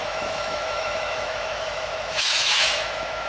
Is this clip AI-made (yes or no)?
yes